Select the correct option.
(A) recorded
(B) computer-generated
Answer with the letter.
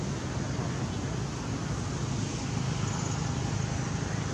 A